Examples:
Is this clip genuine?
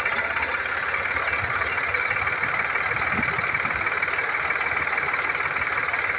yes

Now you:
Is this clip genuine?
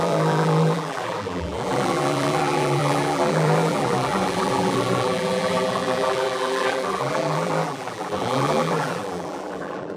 no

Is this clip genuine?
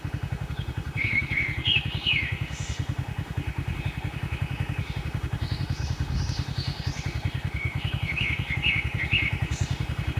no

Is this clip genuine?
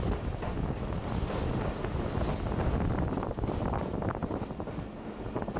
yes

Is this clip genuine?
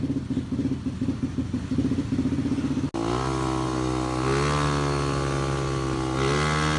yes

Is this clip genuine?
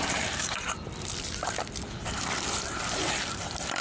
no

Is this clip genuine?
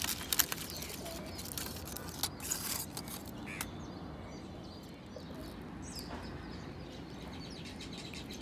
yes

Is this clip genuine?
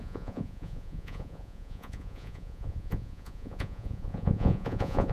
no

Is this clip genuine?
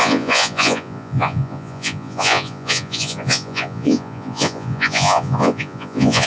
no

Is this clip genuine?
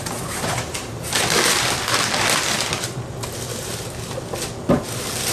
yes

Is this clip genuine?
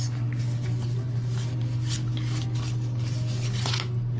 yes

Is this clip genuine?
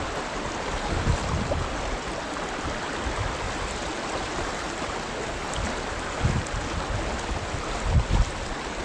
yes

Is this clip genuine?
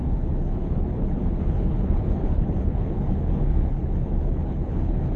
no